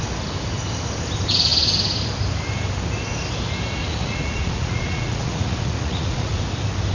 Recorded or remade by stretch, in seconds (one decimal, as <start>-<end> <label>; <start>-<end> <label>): 0.0-3.8 recorded; 3.8-6.4 remade; 6.4-6.9 recorded